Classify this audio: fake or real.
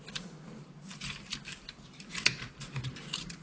fake